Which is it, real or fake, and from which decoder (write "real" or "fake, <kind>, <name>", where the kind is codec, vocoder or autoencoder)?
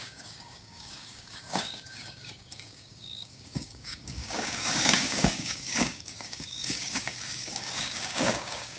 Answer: fake, codec, DAC